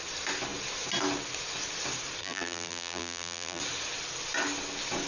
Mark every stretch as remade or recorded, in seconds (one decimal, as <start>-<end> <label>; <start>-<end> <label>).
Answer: 0.0-2.2 recorded; 2.2-3.6 remade; 3.6-5.1 recorded